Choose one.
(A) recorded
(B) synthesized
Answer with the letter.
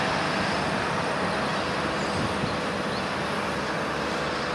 A